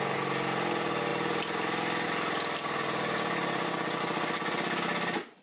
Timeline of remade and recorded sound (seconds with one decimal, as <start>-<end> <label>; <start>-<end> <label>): 0.0-5.4 recorded